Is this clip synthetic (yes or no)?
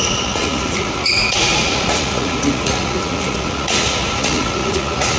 yes